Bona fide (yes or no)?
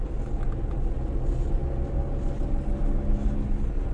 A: yes